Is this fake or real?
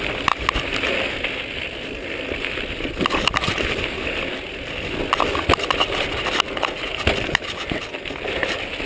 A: real